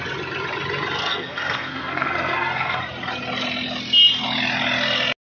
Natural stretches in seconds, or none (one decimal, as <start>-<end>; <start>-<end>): 0.0-1.0; 2.8-5.4